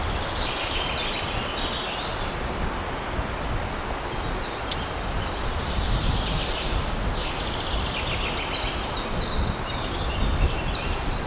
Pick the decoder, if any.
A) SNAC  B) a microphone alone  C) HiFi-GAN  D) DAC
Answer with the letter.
B